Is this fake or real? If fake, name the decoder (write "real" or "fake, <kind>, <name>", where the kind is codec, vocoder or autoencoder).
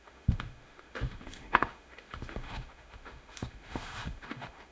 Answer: fake, autoencoder, DAC-VAE